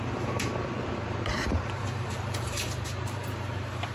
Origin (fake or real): fake